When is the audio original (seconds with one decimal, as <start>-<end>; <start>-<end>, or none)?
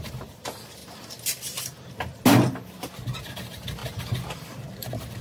0.0-5.2